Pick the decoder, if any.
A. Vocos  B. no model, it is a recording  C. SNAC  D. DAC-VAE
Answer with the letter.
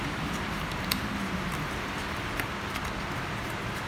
B